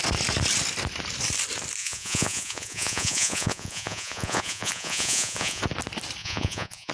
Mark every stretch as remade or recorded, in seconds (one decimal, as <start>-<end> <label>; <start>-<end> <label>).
0.0-1.8 recorded; 1.8-5.6 remade; 5.6-6.2 recorded; 6.2-6.9 remade